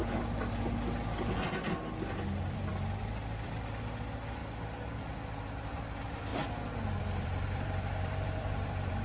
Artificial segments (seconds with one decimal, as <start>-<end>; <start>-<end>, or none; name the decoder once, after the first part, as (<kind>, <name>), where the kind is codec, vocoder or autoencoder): 2.1-4.4 (vocoder, BigVGAN v2); 5.6-6.3; 7.0-9.0